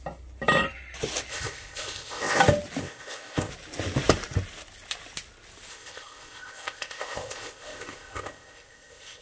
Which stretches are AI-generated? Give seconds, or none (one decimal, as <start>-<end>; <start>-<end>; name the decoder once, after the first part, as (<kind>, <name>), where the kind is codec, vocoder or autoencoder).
1.3-2.4 (codec, ZipCodec); 2.8-3.5; 5.7-9.2